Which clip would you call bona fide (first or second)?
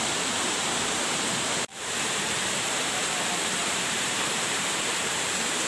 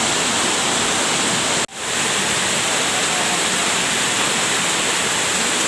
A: second